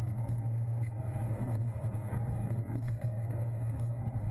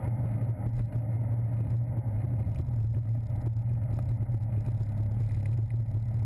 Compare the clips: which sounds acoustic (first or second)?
second